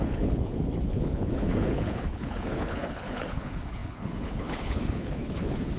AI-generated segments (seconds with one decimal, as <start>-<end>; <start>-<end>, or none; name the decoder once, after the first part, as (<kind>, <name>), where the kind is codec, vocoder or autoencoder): 0.0-5.8 (codec, HILCodec)